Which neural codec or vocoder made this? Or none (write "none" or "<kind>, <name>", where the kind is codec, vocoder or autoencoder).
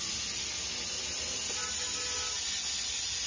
none